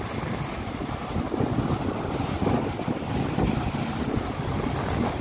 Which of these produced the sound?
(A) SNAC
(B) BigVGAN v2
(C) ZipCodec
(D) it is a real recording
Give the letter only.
D